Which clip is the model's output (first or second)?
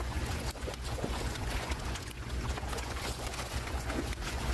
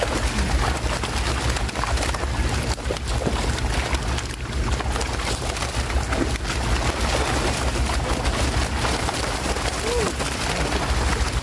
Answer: first